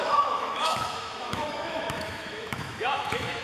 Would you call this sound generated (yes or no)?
yes